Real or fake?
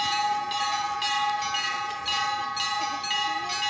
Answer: real